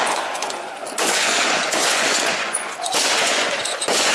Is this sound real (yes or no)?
no